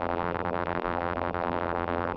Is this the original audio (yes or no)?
no